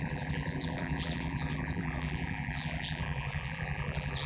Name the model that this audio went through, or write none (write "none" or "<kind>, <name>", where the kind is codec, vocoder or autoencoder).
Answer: vocoder, BigVGAN v2